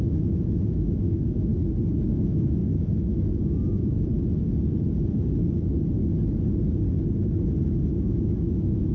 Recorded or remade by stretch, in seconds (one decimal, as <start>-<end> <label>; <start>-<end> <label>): 0.0-1.5 remade; 1.5-2.1 recorded; 2.1-4.1 remade; 4.1-7.9 recorded; 7.9-8.9 remade